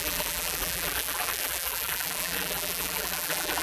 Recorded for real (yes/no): no